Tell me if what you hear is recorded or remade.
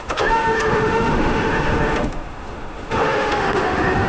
remade